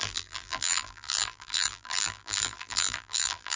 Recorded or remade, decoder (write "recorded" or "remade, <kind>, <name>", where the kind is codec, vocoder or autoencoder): remade, vocoder, BigVGAN v2